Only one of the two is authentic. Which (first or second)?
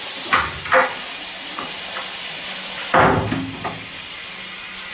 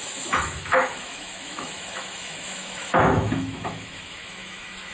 first